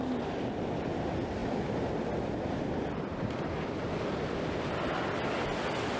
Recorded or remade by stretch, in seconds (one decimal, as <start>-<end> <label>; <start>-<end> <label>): 0.0-6.0 recorded